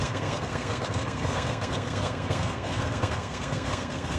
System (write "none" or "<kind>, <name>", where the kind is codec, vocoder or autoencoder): codec, SNAC